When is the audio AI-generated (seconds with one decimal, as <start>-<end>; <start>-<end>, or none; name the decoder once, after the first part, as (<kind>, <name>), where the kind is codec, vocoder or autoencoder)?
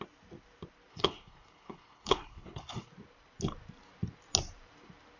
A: 0.9-2.9 (codec, HILCodec)